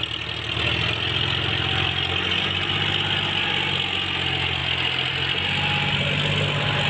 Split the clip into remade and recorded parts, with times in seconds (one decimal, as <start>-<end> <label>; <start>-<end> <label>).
0.0-6.9 recorded